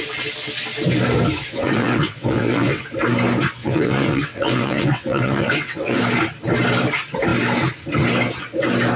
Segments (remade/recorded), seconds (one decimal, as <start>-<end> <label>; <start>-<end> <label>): 0.0-1.5 recorded; 1.5-2.8 remade; 2.8-3.6 recorded; 3.6-6.0 remade; 6.0-9.0 recorded